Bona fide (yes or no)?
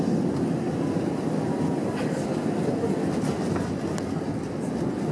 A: yes